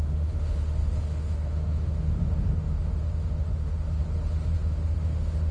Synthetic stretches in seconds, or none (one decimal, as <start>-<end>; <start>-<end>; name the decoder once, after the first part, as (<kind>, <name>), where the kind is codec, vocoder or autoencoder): 0.0-4.0 (autoencoder, DAC-VAE); 4.5-5.5